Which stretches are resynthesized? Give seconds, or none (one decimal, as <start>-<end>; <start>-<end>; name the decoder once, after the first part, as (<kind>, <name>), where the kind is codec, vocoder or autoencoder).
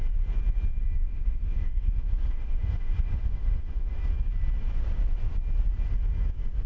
1.1-4.0 (autoencoder, DAC-VAE)